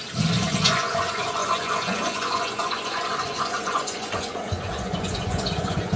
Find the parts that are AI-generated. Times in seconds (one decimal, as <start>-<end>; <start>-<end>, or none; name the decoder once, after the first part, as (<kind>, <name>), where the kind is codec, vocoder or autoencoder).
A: 0.6-6.0 (vocoder, Vocos)